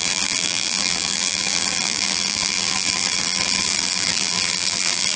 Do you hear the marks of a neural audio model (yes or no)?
yes